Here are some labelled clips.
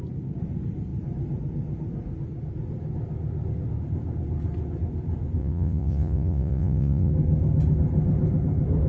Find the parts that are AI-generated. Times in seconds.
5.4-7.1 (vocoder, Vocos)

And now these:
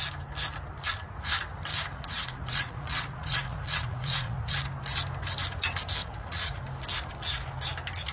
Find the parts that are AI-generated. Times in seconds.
1.7-4.5 (vocoder, Vocos); 6.0-6.6

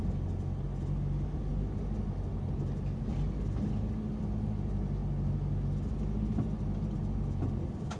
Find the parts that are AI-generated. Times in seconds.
none

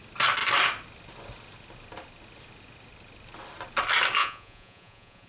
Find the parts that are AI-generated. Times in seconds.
4.2-5.3 (vocoder, Vocos)

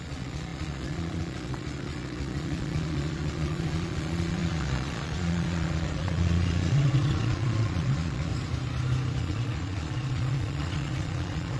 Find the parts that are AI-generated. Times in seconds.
0.0-8.3 (vocoder, Vocos); 9.2-11.6

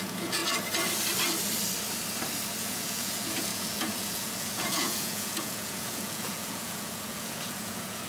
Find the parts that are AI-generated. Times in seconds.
0.0-0.4 (vocoder, Vocos); 2.6-8.1